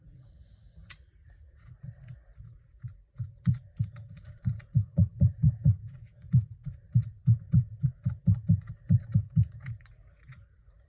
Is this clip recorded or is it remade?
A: remade